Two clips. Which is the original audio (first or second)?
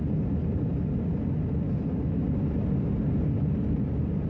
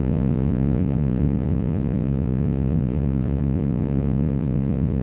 first